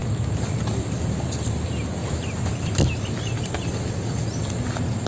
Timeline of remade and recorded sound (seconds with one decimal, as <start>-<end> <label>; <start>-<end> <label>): 0.0-5.1 recorded